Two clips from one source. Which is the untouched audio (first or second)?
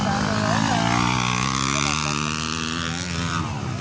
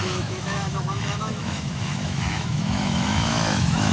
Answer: first